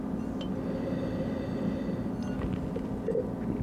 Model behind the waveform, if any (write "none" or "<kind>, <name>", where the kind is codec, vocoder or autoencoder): none